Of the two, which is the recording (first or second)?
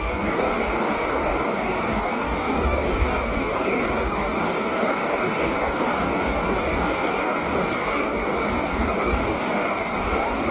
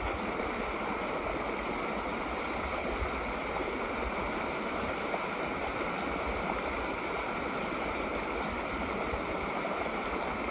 second